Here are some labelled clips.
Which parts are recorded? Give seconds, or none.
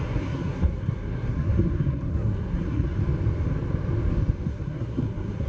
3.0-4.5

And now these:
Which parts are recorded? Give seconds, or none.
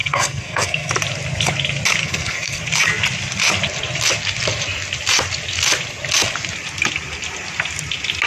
0.9-2.0; 2.6-8.3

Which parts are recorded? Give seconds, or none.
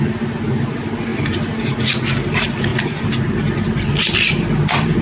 0.0-5.0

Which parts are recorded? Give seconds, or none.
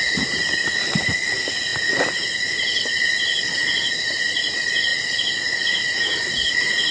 0.0-6.9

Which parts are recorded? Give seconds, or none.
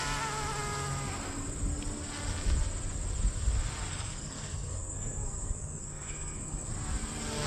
0.0-3.9; 6.7-7.5